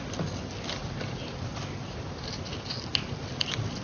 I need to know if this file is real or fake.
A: real